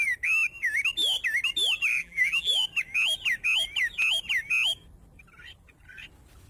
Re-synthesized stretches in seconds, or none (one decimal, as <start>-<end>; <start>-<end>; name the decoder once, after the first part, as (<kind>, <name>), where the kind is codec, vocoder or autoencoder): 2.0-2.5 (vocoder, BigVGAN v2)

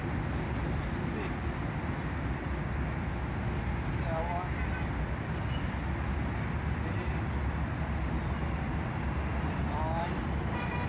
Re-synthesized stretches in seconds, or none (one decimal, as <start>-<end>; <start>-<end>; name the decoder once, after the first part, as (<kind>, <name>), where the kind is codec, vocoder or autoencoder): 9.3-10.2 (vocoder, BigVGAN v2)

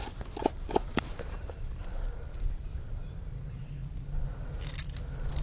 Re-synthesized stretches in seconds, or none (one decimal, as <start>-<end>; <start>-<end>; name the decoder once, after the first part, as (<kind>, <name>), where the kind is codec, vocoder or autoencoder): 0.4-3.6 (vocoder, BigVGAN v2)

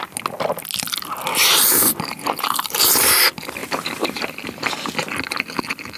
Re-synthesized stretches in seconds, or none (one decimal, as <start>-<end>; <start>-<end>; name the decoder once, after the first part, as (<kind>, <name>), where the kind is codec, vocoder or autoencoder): 1.3-3.1 (vocoder, BigVGAN v2); 3.6-4.5

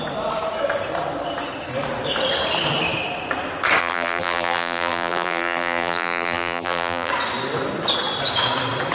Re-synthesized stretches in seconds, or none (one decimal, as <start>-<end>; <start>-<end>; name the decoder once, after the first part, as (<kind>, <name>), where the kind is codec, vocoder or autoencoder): 3.8-7.1 (vocoder, BigVGAN v2)

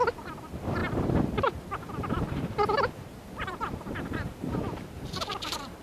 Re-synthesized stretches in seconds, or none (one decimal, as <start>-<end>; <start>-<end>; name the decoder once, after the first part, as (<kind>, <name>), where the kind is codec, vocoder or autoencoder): 0.0-5.8 (vocoder, BigVGAN v2)